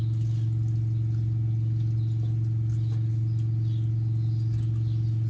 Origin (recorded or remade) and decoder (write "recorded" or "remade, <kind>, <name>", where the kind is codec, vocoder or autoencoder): recorded